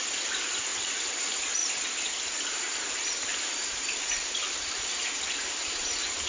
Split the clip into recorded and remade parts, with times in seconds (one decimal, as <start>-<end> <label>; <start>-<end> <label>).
0.0-0.7 remade; 0.7-1.2 recorded; 1.2-6.3 remade